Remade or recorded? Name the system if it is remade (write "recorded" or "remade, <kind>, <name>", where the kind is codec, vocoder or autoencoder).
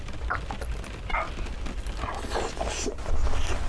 recorded